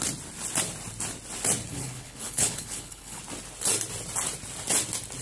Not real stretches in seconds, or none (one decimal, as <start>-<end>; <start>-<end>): 1.7-3.2